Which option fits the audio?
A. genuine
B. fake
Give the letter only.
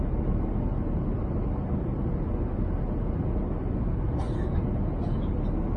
A